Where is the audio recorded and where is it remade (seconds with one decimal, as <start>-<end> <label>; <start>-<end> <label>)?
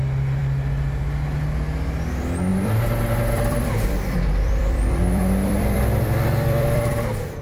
0.0-2.5 recorded; 2.5-6.9 remade; 6.9-7.4 recorded